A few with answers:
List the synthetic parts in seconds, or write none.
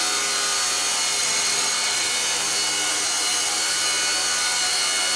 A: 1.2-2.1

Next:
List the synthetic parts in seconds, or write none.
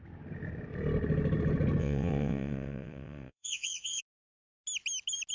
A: 1.8-4.0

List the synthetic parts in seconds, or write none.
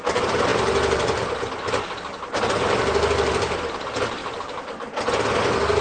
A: none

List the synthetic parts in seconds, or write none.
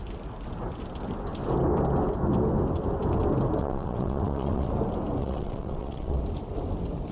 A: 3.6-4.7; 5.2-6.2